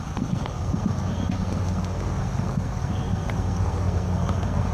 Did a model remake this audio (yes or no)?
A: yes